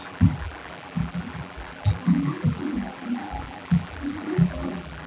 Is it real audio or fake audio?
fake